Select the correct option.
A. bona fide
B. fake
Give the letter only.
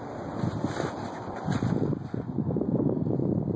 A